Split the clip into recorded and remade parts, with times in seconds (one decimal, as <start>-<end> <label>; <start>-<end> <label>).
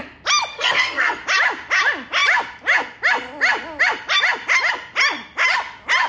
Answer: 0.0-0.5 recorded; 0.5-1.2 remade; 1.2-6.1 recorded